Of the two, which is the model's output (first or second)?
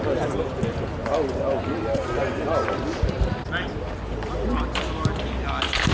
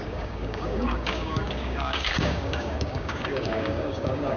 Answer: second